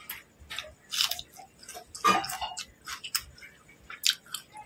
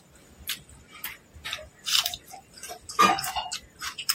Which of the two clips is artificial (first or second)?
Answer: second